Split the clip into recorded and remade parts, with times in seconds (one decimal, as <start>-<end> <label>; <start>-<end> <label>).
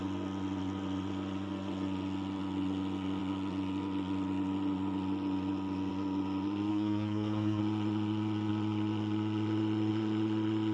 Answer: 0.0-6.7 recorded; 6.7-7.6 remade; 7.6-10.7 recorded